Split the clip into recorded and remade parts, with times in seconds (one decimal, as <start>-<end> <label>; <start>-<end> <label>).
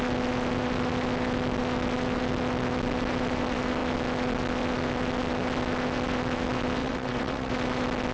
0.0-6.8 recorded; 6.8-7.5 remade; 7.5-8.1 recorded